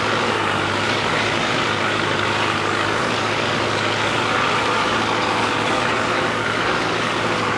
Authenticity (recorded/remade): remade